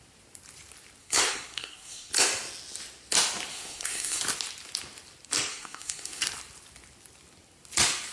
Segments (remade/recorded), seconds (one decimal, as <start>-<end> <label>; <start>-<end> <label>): 0.0-1.0 recorded; 1.0-2.1 remade; 2.1-3.5 recorded; 3.5-4.2 remade; 4.2-5.5 recorded; 5.5-6.2 remade; 6.2-8.1 recorded